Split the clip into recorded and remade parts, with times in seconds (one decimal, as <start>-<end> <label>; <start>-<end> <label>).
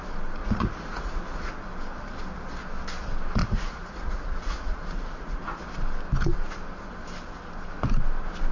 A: 0.0-0.4 recorded; 0.4-1.5 remade; 1.5-3.4 recorded; 3.4-5.6 remade; 5.6-8.5 recorded